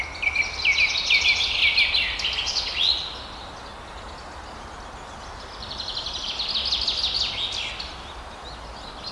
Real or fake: real